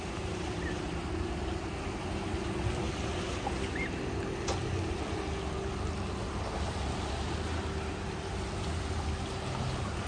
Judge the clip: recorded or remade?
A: recorded